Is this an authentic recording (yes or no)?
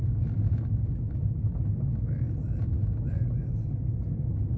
yes